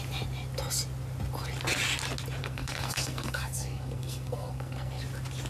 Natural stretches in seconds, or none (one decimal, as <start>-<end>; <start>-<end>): 0.0-2.4; 5.0-5.5